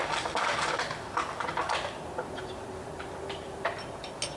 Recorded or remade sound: recorded